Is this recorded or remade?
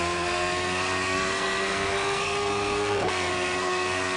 remade